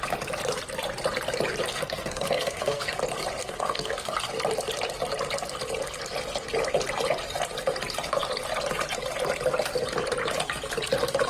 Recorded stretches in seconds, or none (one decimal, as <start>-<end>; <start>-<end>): 0.0-1.7; 3.0-3.4; 4.1-11.3